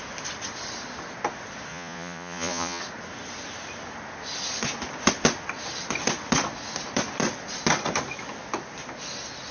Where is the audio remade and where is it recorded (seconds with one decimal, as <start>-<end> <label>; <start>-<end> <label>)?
0.0-1.7 recorded; 1.7-2.8 remade; 2.8-9.5 recorded